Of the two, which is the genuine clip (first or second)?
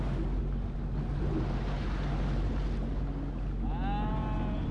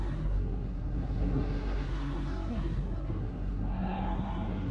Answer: first